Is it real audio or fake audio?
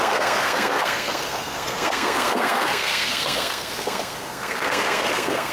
fake